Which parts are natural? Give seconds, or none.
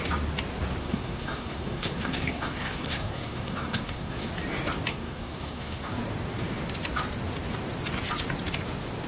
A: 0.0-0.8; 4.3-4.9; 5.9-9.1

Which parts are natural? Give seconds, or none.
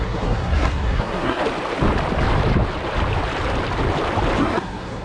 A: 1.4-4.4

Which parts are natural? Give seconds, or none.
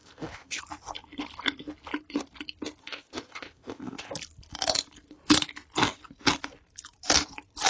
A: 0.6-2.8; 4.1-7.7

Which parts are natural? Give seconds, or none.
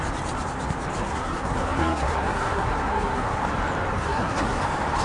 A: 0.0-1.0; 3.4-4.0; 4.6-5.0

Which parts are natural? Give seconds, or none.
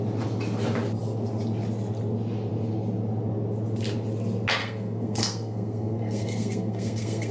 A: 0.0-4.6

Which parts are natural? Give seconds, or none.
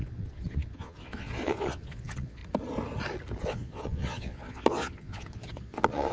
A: 2.4-3.4